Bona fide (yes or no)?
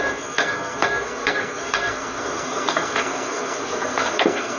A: no